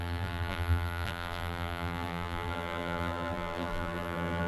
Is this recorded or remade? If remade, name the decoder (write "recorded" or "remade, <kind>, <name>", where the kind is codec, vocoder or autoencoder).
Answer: remade, vocoder, BigVGAN v2